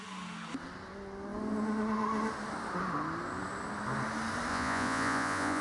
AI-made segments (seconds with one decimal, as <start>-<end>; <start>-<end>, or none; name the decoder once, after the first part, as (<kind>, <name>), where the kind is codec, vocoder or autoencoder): 4.5-5.6 (vocoder, Vocos)